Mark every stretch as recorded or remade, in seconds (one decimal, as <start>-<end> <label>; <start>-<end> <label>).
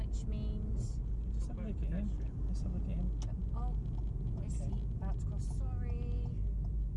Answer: 0.0-7.0 recorded